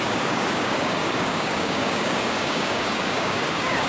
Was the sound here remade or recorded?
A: remade